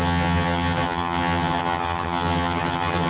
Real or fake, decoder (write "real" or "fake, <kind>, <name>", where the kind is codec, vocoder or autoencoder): fake, vocoder, HiFi-GAN